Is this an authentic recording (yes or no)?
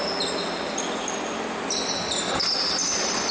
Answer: yes